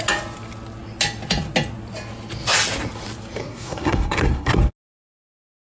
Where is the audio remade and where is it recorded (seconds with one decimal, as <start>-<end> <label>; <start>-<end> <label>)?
0.0-3.4 recorded; 3.4-4.6 remade; 4.6-5.6 recorded